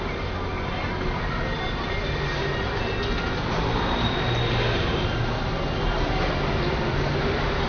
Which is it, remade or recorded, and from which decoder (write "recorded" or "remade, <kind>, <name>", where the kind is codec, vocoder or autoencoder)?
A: recorded